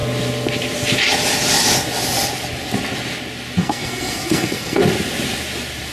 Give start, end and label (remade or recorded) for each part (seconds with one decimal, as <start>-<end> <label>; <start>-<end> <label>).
0.0-3.6 recorded; 3.6-4.8 remade; 4.8-5.9 recorded